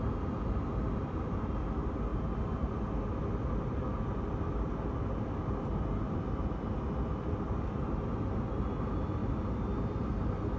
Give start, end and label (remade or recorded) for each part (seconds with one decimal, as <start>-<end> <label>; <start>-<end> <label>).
0.0-10.6 recorded